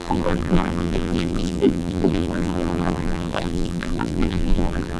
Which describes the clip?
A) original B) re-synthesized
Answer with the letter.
B